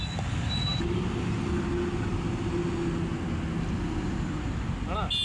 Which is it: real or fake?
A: real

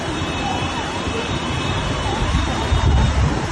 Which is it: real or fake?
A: fake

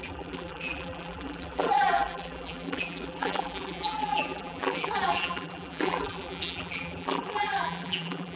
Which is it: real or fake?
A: fake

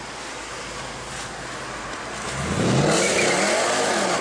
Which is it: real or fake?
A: real